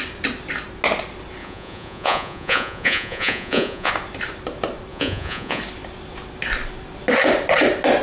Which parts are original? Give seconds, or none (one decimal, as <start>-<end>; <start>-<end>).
0.0-1.4; 3.9-4.9; 5.6-8.0